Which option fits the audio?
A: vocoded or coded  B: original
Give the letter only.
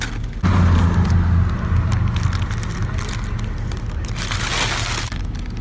B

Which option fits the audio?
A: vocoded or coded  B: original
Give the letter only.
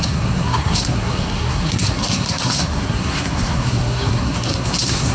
A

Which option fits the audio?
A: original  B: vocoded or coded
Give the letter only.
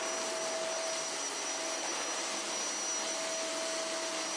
A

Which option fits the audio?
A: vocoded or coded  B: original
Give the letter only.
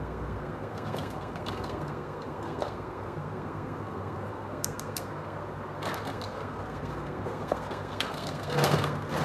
A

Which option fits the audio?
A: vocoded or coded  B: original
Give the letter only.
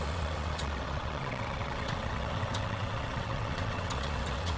A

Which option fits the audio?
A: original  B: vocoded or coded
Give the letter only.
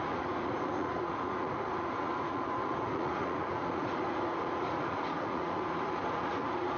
B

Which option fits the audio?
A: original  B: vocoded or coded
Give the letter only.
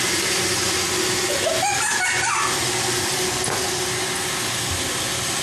A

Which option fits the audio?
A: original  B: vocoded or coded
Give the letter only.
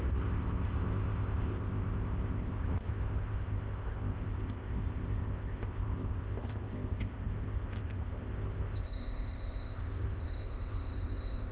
B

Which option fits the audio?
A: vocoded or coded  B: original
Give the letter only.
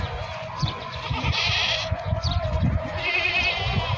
A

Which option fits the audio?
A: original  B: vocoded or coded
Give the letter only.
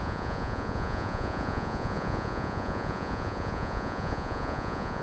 B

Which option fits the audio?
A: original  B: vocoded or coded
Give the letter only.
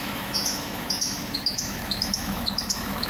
B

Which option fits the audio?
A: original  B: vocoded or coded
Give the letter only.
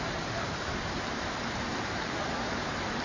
B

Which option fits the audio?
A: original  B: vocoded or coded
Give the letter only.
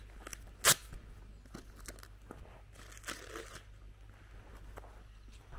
A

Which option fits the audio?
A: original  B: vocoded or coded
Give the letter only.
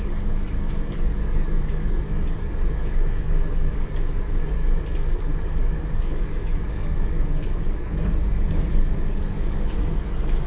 B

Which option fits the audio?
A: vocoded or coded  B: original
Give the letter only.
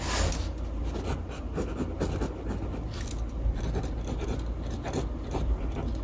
B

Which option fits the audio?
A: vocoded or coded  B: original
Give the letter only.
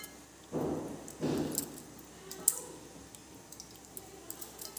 B